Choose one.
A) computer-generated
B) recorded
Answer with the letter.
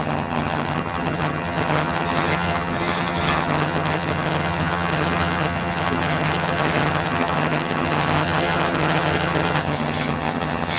A